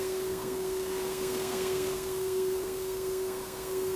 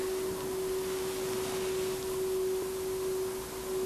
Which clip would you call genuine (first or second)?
second